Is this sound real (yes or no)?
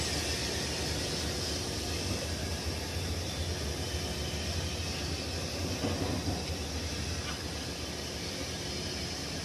yes